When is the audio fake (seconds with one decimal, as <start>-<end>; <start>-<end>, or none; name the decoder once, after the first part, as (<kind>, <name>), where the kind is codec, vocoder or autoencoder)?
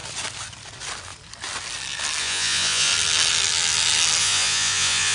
2.2-2.9 (vocoder, Vocos); 4.2-5.1